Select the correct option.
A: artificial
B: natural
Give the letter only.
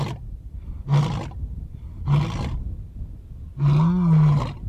B